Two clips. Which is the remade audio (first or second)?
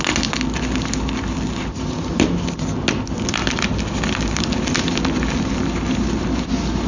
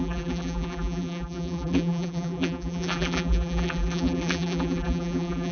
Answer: second